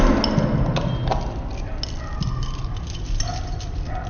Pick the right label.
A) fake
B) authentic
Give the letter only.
B